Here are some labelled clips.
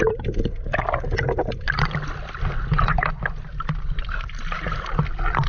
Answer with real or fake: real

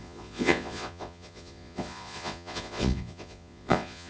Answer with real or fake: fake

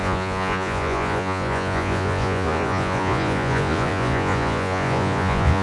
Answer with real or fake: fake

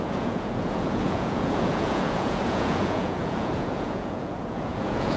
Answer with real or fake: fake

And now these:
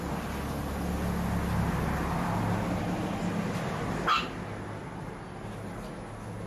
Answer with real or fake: real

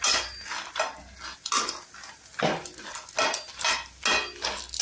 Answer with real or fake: real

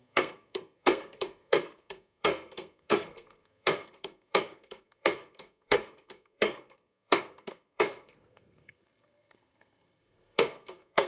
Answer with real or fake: fake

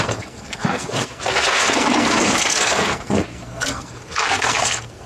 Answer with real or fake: fake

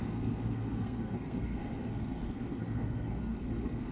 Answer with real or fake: fake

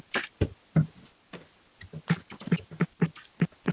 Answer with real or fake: real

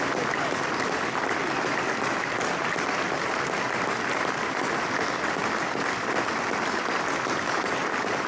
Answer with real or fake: real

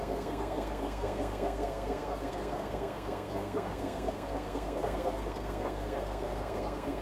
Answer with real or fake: fake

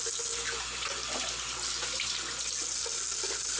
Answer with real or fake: real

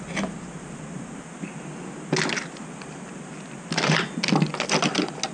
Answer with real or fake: real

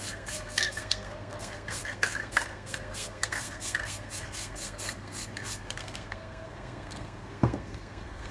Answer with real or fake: fake